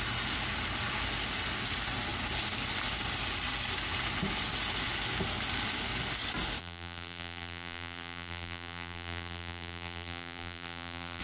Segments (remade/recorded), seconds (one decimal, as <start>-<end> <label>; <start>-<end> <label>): 0.0-6.6 recorded; 6.6-11.2 remade